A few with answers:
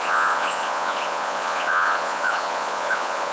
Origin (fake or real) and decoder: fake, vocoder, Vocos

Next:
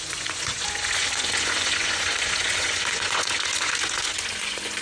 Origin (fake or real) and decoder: fake, vocoder, Vocos